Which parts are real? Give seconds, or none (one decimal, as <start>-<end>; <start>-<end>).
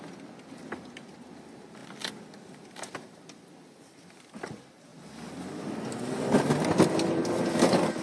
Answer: 1.8-2.9; 4.9-5.9